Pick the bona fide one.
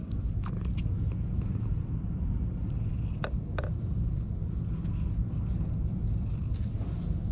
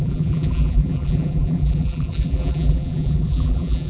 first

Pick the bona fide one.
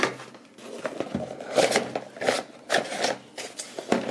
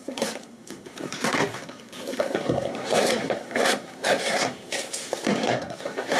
first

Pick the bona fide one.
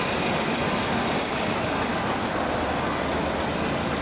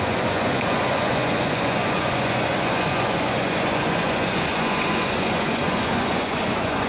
first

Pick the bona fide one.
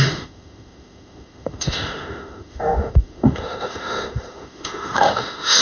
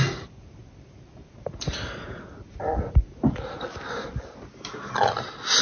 second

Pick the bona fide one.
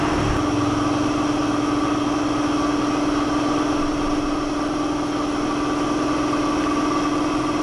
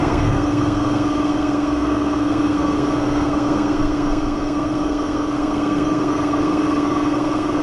first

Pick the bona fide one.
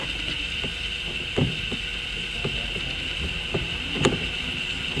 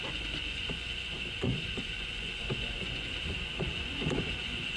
first